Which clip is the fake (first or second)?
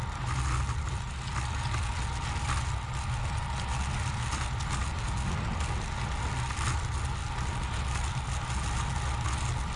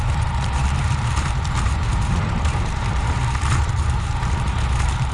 second